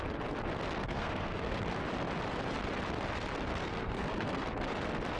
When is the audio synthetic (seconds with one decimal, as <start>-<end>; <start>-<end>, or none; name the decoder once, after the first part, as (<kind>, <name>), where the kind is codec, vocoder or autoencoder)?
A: 0.8-1.6 (codec, SNAC); 3.6-4.4